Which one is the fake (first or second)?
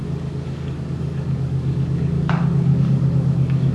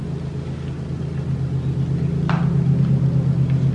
first